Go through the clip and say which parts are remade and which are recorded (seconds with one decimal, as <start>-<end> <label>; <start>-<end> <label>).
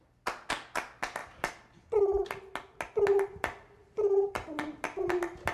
0.0-3.8 recorded; 3.8-4.5 remade; 4.5-5.5 recorded